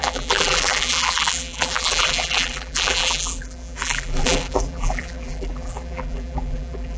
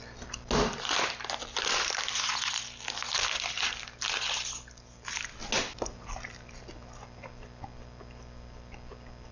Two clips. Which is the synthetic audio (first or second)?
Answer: first